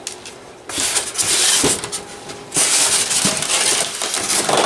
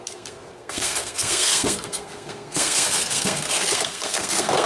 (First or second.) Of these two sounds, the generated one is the second